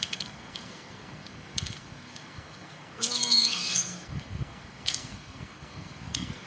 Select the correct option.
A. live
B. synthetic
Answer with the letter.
B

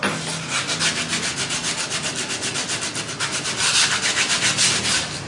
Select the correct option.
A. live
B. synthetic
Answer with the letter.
A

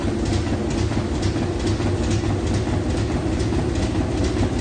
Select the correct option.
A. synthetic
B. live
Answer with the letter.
B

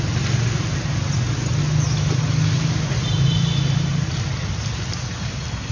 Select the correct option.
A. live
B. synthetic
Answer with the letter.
A